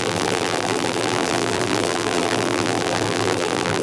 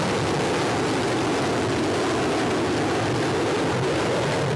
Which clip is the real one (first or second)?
second